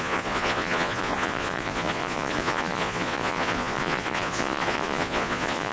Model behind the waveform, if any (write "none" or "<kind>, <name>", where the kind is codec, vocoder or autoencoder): vocoder, Vocos